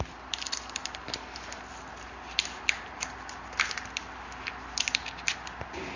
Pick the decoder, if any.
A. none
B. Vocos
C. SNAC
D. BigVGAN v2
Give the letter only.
A